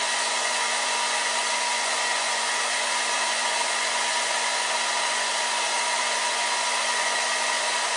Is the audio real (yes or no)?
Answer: no